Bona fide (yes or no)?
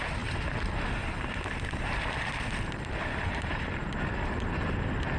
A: yes